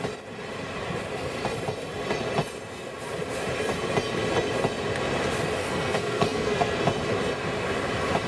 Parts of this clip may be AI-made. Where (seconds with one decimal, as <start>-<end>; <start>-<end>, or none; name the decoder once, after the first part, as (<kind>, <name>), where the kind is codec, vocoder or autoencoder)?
5.6-6.8 (codec, SNAC)